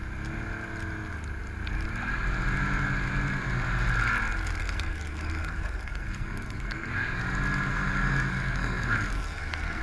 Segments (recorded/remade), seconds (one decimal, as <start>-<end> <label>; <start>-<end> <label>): 0.0-4.6 recorded; 4.6-6.9 remade; 6.9-7.7 recorded; 7.7-9.8 remade